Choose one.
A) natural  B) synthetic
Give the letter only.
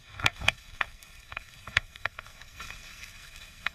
B